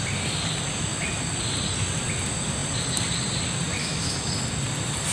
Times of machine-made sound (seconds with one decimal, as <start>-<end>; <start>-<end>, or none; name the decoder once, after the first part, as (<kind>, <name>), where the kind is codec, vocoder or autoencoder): 3.8-4.3 (autoencoder, DAC-VAE)